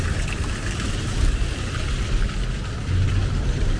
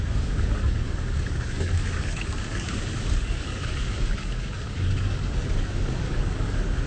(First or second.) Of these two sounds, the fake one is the second